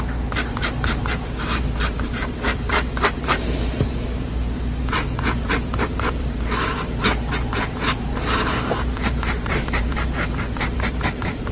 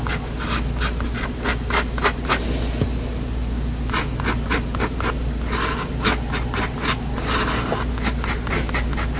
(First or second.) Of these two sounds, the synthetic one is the first